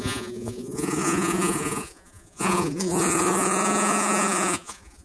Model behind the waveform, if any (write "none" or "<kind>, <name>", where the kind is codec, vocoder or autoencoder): vocoder, Vocos